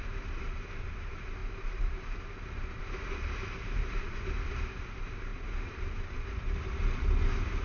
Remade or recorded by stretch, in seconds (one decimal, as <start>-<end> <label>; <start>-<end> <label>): 0.0-7.6 remade